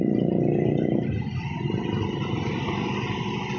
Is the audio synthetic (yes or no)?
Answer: no